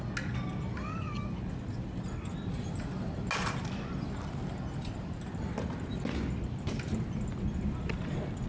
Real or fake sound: real